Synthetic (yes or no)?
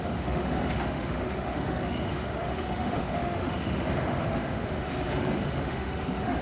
yes